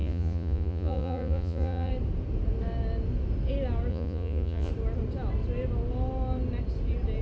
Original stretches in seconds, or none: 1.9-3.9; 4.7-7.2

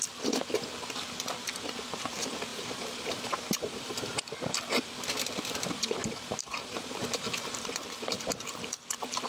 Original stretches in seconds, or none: 0.0-2.5; 4.2-6.0; 7.7-9.3

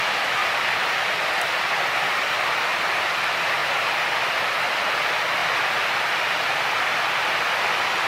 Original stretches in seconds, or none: 0.0-0.4; 1.6-3.6; 4.6-8.1